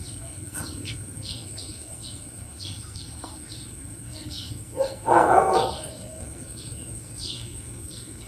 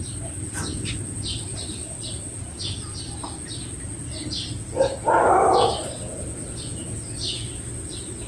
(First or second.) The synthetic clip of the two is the first